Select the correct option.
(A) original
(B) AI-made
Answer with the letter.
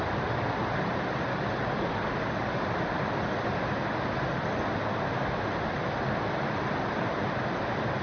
A